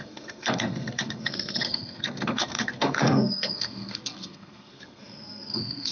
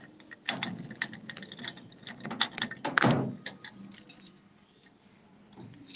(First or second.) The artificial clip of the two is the first